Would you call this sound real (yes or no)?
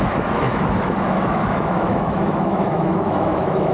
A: no